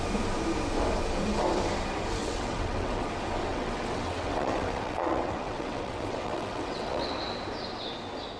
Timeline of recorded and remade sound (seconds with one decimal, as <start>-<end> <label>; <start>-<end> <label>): 0.0-2.2 recorded; 2.2-3.1 remade; 3.1-3.5 recorded; 3.5-7.1 remade; 7.1-8.4 recorded